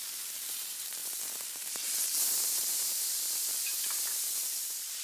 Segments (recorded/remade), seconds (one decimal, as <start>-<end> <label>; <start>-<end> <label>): 0.0-5.0 remade